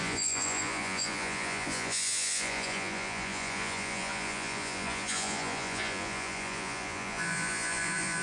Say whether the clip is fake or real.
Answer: fake